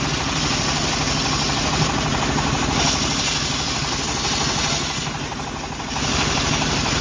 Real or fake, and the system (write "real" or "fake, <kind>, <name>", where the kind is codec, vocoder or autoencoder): real